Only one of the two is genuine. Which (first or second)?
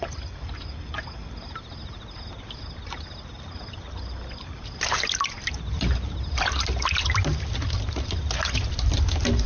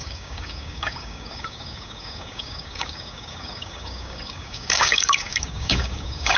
first